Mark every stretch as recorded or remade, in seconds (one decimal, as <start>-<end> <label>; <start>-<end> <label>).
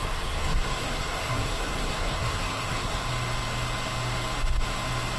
0.0-3.1 remade; 3.1-5.2 recorded